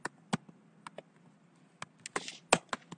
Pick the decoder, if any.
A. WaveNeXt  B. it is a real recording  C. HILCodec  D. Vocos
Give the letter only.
B